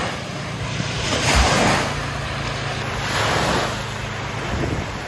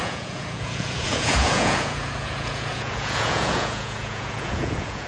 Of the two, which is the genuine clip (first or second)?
first